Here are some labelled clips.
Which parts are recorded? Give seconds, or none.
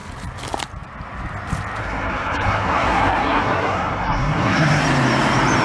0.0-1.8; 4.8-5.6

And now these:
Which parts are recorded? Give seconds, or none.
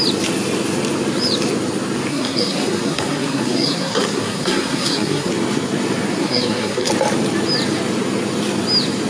0.0-2.1; 5.3-6.2; 6.9-9.1